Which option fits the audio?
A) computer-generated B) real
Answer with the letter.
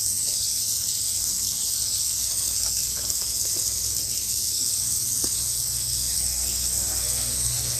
A